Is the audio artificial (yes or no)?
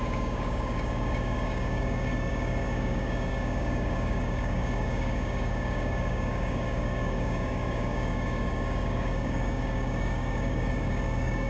yes